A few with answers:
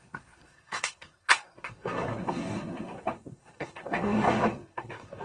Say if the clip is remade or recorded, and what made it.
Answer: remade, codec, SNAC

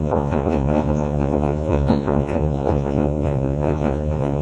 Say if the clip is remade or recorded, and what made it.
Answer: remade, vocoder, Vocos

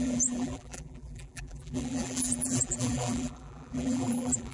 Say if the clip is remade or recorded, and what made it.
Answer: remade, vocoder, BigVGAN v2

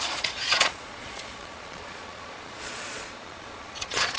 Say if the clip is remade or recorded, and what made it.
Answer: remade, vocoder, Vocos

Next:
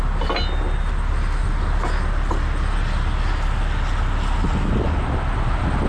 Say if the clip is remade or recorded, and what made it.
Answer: recorded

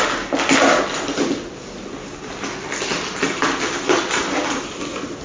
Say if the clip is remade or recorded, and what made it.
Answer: recorded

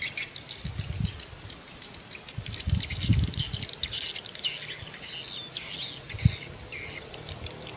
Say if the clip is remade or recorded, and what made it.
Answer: recorded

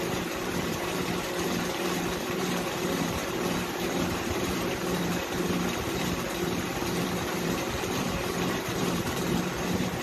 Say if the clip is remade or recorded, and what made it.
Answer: remade, vocoder, BigVGAN v2